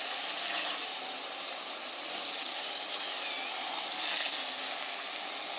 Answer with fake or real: real